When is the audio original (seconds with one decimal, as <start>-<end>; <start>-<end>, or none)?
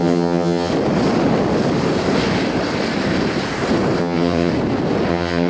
0.7-4.0; 4.5-5.1